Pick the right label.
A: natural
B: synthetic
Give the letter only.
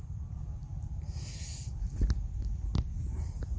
A